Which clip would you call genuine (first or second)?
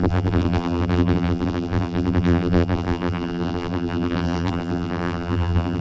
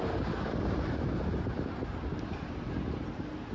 second